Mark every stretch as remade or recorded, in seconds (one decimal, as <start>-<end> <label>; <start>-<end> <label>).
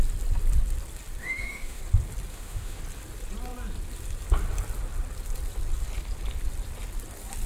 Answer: 0.0-1.2 recorded; 1.2-1.8 remade; 1.8-2.3 recorded; 2.3-2.8 remade; 2.8-7.5 recorded